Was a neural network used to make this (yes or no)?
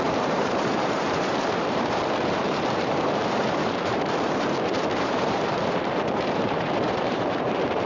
yes